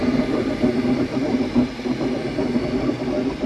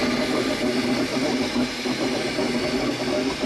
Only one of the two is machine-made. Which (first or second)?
first